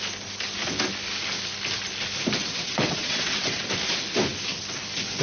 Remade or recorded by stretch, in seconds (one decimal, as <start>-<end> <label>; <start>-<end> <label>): 0.0-2.4 recorded; 2.4-3.7 remade; 3.7-5.2 recorded